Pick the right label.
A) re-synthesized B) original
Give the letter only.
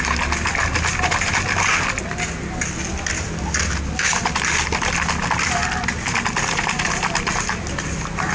B